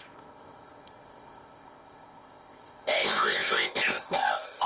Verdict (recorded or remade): remade